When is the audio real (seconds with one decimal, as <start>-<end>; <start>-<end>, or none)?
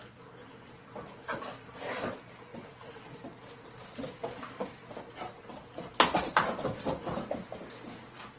0.0-8.4